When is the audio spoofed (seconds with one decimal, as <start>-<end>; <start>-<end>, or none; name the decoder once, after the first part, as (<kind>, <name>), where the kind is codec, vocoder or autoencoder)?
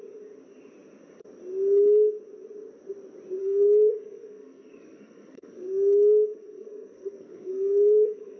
3.4-8.4 (codec, SNAC)